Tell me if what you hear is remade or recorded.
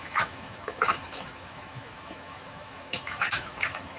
remade